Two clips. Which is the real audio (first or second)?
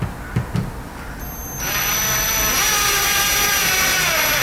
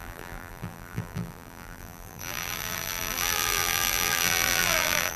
first